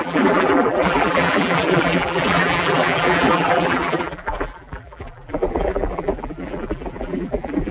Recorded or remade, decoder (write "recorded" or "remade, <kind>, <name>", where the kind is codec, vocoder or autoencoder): remade, vocoder, BigVGAN v2